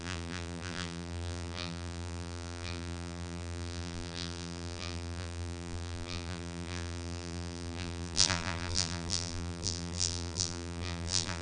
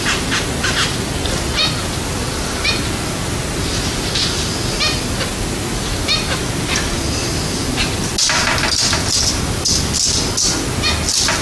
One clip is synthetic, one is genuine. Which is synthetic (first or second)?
first